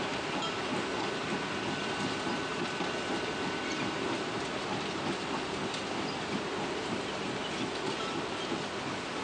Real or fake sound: real